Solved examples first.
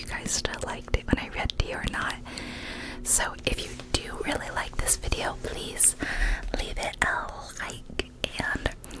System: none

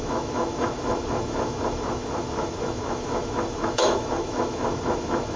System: autoencoder, DAC-VAE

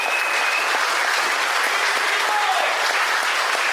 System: none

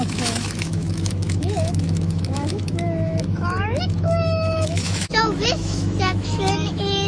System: autoencoder, DAC-VAE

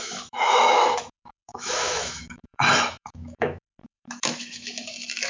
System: autoencoder, DAC-VAE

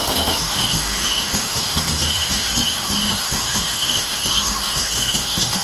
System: autoencoder, DAC-VAE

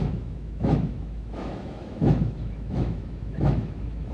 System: autoencoder, DAC-VAE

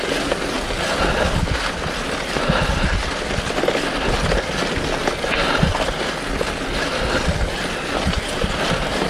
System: none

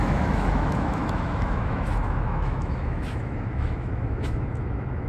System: autoencoder, DAC-VAE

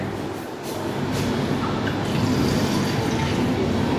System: none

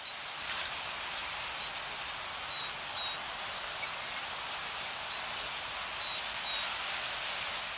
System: none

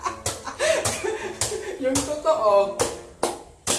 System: none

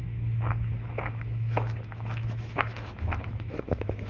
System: autoencoder, DAC-VAE